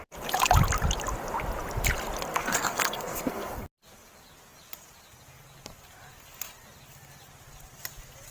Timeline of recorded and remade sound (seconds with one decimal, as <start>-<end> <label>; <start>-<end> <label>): 0.0-2.3 recorded; 2.3-3.5 remade; 3.5-8.3 recorded